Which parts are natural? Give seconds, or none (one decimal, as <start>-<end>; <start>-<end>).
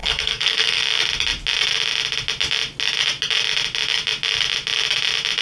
0.8-5.4